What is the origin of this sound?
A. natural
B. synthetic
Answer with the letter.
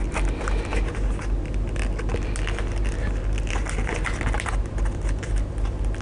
A